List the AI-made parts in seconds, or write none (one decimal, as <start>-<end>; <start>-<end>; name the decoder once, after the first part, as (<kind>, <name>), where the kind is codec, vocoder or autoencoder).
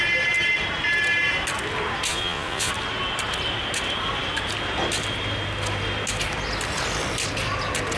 2.1-2.7 (vocoder, Vocos)